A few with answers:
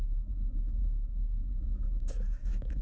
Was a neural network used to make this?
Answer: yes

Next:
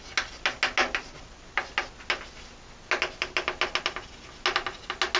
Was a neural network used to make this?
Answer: no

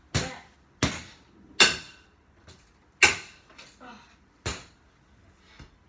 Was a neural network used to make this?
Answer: no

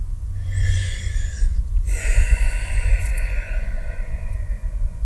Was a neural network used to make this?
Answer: yes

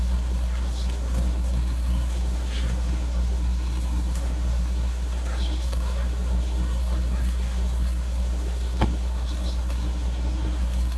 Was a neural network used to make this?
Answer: yes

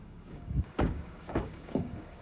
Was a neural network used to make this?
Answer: yes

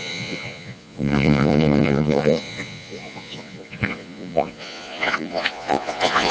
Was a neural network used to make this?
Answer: yes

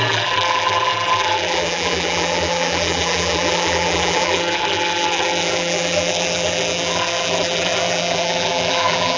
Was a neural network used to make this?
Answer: yes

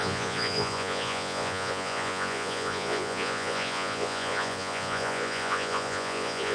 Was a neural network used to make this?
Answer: yes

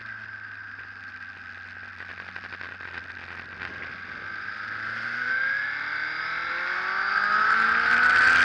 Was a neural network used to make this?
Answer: no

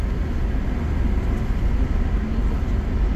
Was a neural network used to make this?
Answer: no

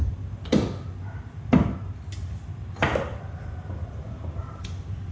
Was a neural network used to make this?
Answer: no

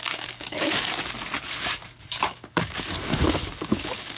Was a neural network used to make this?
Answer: yes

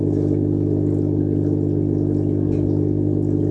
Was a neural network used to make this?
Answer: no